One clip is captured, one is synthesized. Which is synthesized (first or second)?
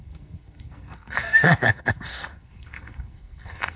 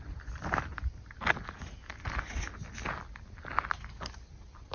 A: first